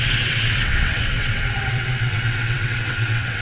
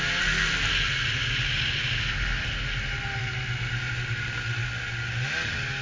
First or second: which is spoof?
first